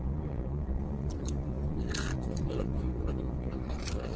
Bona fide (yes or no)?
no